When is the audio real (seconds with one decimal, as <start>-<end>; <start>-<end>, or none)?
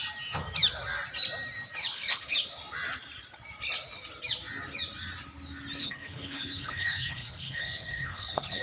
0.0-1.8; 2.5-5.8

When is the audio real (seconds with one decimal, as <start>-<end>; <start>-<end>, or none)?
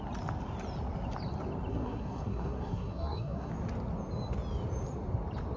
0.0-1.7; 3.5-5.6